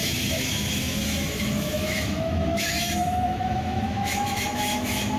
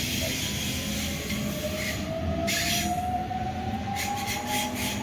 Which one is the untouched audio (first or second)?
second